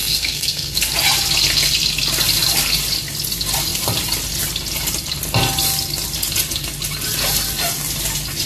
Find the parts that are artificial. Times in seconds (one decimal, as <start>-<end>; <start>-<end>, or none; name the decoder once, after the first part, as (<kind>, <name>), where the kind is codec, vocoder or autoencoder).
0.0-0.8 (codec, SNAC)